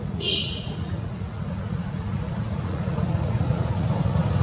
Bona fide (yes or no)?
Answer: no